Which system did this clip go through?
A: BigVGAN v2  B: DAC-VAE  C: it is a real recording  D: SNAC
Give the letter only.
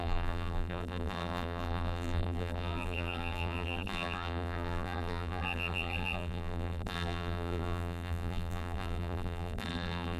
A